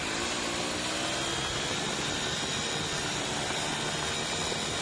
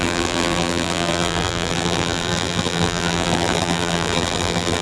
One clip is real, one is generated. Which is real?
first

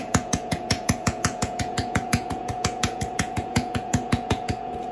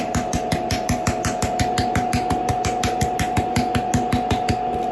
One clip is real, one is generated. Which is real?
second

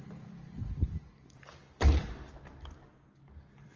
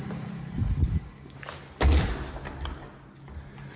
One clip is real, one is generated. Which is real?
second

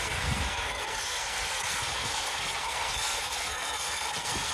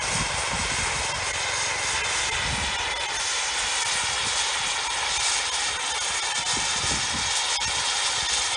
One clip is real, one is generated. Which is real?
second